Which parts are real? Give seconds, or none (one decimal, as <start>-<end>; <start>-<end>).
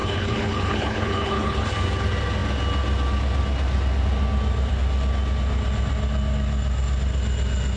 1.7-7.8